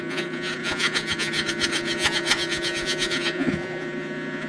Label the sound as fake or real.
fake